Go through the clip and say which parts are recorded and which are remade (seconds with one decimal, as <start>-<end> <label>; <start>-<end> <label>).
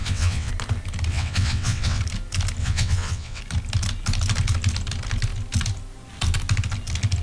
0.0-0.5 remade; 0.5-1.1 recorded; 1.1-2.0 remade; 2.0-2.6 recorded; 2.6-3.4 remade; 3.4-7.2 recorded